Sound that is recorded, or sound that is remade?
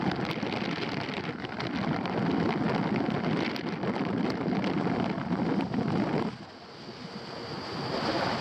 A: recorded